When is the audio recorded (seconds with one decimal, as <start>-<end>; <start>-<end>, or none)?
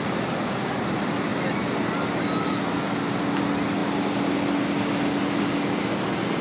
0.0-6.4